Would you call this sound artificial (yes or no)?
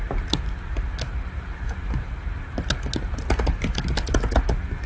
no